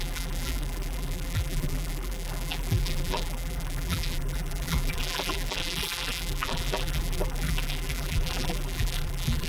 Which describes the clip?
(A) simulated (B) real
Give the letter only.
A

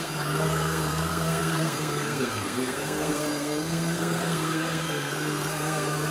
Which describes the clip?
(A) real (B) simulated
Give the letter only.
B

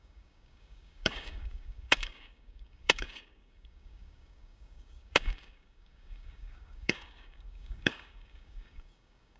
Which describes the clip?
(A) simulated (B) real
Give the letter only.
A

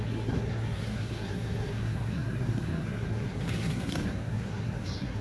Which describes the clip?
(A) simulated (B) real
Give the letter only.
A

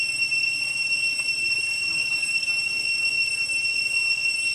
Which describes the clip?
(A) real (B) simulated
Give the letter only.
A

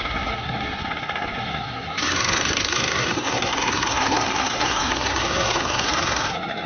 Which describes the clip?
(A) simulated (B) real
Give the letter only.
A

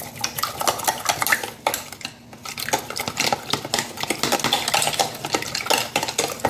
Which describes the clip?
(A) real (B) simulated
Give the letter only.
A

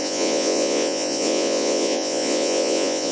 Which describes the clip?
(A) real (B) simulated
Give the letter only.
B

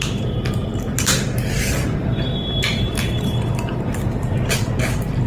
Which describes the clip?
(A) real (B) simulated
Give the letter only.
B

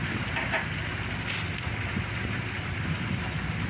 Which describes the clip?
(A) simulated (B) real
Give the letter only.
B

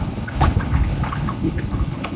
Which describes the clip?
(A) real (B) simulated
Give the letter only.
B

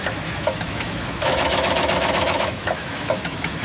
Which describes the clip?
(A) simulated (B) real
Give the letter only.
A